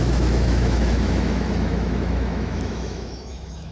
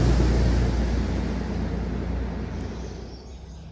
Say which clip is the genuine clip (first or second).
second